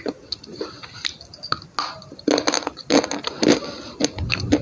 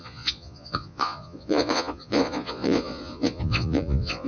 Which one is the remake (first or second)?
second